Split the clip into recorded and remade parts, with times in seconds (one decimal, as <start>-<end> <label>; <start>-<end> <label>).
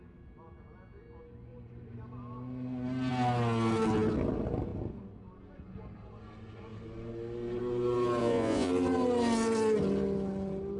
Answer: 0.0-8.2 recorded; 8.2-8.7 remade; 8.7-10.8 recorded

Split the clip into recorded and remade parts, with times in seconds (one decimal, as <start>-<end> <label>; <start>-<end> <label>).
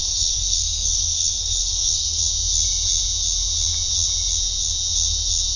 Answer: 0.0-2.2 remade; 2.2-5.6 recorded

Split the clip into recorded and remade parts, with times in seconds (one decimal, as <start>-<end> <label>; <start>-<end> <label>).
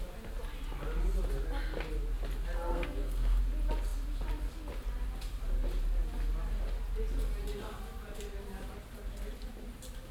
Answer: 0.0-2.7 recorded; 2.7-3.4 remade; 3.4-10.1 recorded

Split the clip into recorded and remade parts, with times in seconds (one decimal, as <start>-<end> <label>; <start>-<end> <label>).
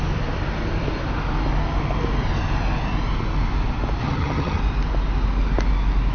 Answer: 0.0-4.0 recorded; 4.0-4.6 remade; 4.6-6.1 recorded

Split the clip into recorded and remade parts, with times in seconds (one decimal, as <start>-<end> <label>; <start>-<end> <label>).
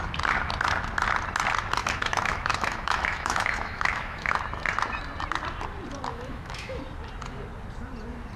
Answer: 0.0-1.8 recorded; 1.8-4.4 remade; 4.4-6.1 recorded; 6.1-6.8 remade; 6.8-8.4 recorded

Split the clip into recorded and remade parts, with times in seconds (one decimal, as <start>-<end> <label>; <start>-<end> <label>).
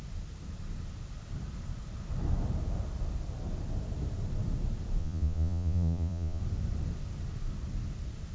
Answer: 0.0-5.0 recorded; 5.0-6.4 remade; 6.4-8.3 recorded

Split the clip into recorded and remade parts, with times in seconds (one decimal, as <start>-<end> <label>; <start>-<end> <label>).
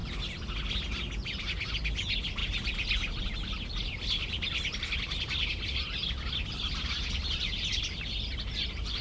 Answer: 0.0-2.4 recorded; 2.4-5.5 remade; 5.5-6.0 recorded; 6.0-9.0 remade